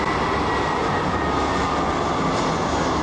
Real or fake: real